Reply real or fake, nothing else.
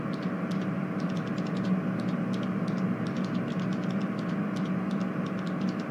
real